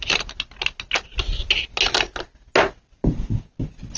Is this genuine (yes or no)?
yes